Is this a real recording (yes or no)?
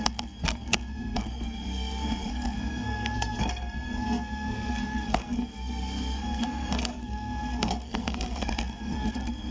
no